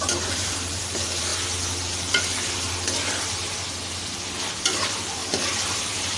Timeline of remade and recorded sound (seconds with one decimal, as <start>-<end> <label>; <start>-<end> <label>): 0.0-1.3 remade; 1.3-4.5 recorded; 4.5-5.2 remade; 5.2-5.8 recorded; 5.8-6.2 remade